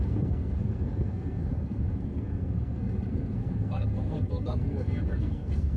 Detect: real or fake fake